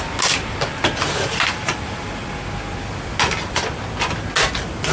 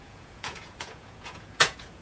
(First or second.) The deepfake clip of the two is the second